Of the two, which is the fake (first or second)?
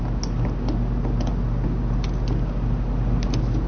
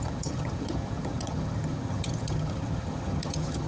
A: second